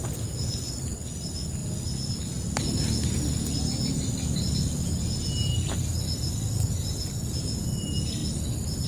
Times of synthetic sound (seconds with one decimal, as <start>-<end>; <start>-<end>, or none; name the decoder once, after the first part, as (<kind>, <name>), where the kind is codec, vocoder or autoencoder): none